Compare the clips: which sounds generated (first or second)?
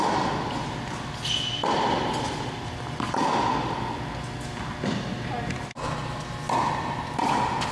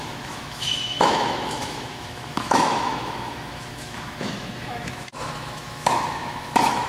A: second